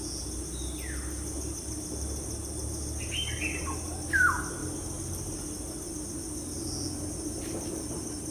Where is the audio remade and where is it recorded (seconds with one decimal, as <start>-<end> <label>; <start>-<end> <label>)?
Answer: 0.0-8.3 recorded